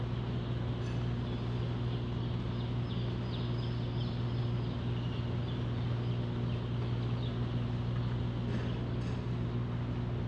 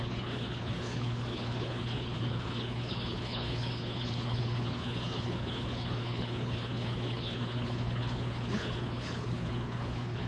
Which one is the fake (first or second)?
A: second